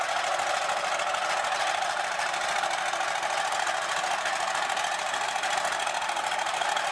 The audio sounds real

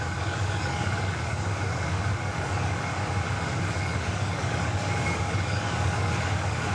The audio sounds fake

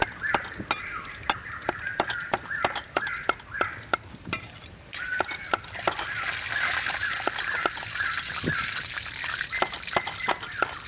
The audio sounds real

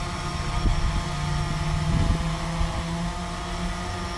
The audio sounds real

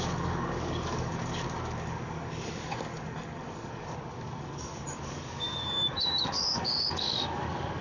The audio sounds fake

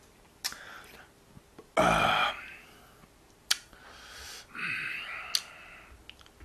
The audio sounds real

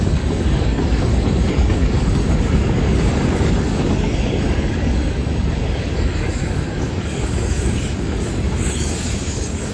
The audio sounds fake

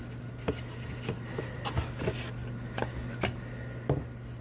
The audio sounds real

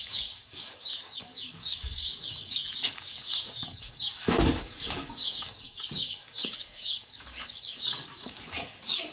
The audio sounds fake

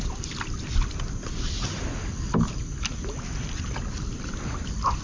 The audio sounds real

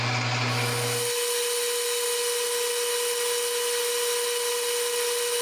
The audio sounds real